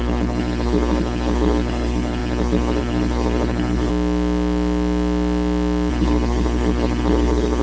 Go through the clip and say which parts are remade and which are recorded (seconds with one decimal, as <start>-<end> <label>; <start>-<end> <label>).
0.0-3.9 remade; 3.9-5.9 recorded; 5.9-7.6 remade